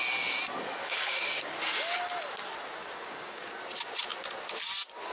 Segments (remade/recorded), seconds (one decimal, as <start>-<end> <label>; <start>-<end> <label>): 0.0-0.8 recorded; 0.8-1.5 remade; 1.5-2.8 recorded; 2.8-3.5 remade; 3.5-5.1 recorded